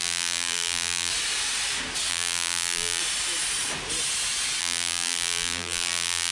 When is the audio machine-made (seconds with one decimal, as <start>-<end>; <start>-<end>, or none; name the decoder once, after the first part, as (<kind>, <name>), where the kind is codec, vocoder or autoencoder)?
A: 0.0-1.1 (vocoder, BigVGAN v2); 2.1-3.0; 4.6-6.3